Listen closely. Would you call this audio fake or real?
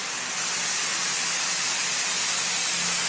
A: real